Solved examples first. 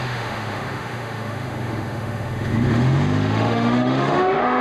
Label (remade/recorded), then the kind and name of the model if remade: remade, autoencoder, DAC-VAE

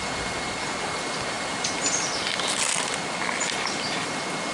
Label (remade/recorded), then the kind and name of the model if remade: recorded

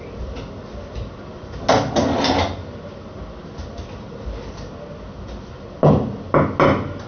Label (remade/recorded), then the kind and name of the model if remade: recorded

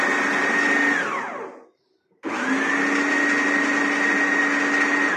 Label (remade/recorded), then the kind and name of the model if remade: recorded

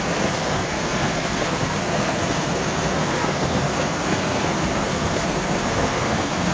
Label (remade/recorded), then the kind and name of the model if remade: remade, codec, SNAC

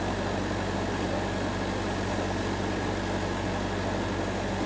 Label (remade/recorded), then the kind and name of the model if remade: recorded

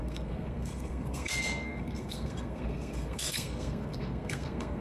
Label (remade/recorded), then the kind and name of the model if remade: remade, codec, SNAC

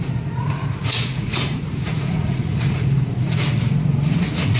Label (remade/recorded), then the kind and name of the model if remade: remade, vocoder, Vocos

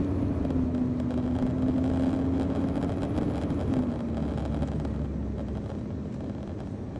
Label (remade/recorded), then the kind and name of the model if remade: recorded